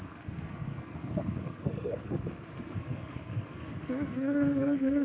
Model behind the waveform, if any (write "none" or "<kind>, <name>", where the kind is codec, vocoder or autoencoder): codec, SNAC